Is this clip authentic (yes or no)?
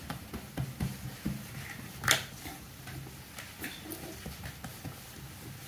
yes